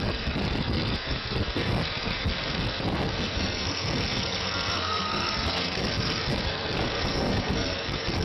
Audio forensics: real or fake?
fake